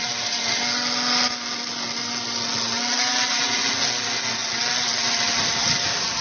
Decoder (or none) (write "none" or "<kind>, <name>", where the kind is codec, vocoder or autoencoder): none